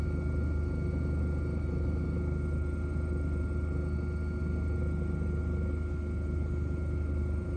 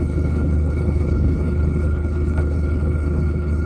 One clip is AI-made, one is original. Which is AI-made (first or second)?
second